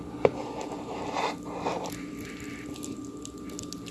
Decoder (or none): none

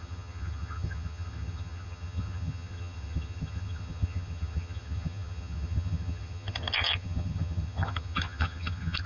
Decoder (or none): vocoder, HiFi-GAN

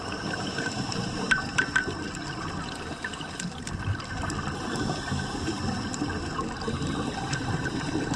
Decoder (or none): vocoder, BigVGAN v2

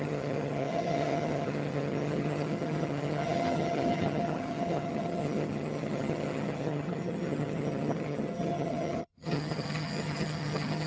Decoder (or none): vocoder, HiFi-GAN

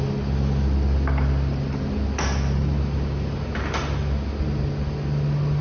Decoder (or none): none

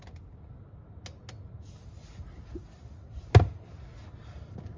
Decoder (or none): none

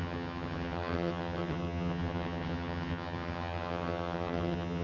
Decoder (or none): vocoder, HiFi-GAN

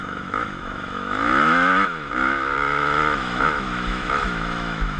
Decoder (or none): autoencoder, DAC-VAE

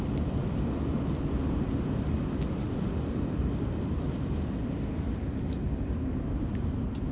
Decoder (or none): none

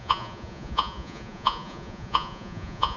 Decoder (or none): vocoder, Vocos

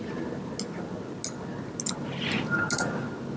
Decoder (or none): none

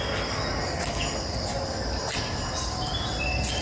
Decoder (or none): none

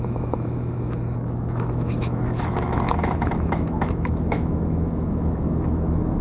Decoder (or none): autoencoder, DAC-VAE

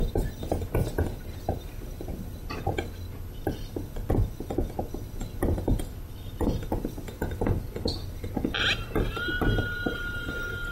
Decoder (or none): none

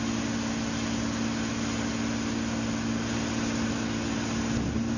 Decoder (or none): none